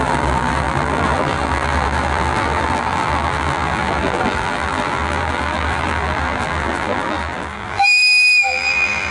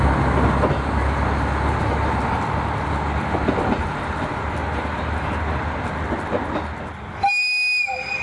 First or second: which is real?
second